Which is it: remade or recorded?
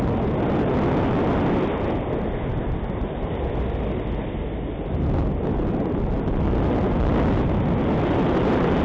recorded